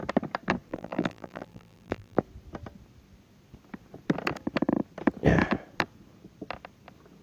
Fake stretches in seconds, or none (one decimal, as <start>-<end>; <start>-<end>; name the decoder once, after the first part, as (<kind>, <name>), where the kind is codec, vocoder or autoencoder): 0.7-2.2 (vocoder, BigVGAN v2)